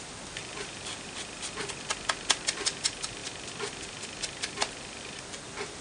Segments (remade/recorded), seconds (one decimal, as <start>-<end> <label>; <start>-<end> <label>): 0.0-5.8 recorded